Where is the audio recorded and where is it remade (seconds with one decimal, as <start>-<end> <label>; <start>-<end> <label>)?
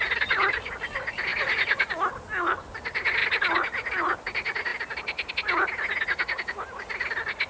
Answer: 0.0-7.5 recorded